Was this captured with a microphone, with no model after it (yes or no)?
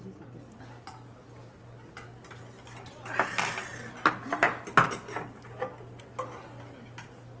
yes